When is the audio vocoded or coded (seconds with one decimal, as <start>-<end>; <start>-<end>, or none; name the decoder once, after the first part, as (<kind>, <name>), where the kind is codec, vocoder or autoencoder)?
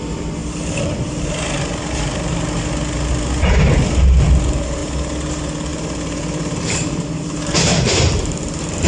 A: 5.7-8.9 (vocoder, BigVGAN v2)